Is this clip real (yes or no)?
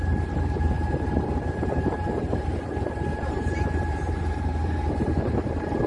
no